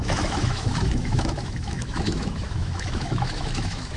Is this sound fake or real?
fake